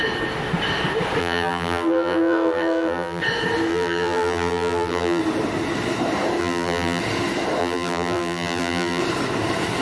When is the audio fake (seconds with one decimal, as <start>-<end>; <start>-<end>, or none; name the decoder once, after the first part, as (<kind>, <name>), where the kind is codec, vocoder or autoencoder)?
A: 1.2-3.2 (vocoder, BigVGAN v2); 3.7-5.2; 6.4-7.0; 7.6-9.0